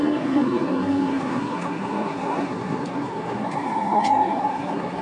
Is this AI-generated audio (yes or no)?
yes